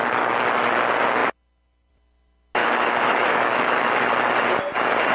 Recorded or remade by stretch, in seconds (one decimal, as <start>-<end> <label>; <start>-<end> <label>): 0.0-0.6 remade; 0.6-2.6 recorded; 2.6-4.0 remade; 4.0-5.1 recorded